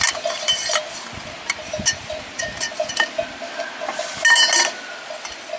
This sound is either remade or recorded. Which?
recorded